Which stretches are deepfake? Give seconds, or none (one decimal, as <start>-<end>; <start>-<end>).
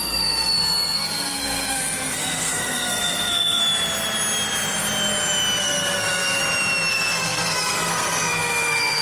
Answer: 0.0-3.6; 5.6-6.4; 6.9-9.0